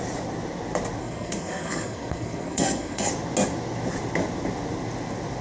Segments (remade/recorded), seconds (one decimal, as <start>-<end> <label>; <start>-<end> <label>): 0.0-1.0 recorded; 1.0-3.1 remade; 3.1-5.4 recorded